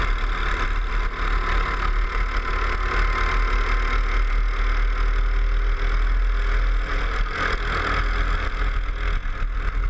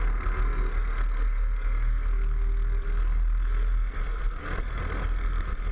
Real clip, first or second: first